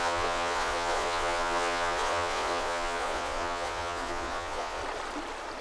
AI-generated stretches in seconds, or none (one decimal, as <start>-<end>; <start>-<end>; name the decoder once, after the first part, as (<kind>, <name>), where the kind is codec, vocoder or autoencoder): 0.0-4.8 (vocoder, Vocos)